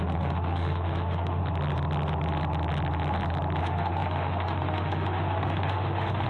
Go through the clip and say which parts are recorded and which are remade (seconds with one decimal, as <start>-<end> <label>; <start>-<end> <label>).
0.0-1.4 remade; 1.4-3.6 recorded; 3.6-6.3 remade